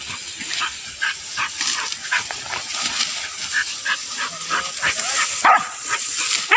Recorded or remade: recorded